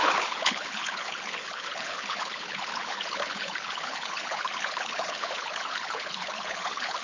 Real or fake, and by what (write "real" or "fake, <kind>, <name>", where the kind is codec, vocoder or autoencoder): fake, codec, HILCodec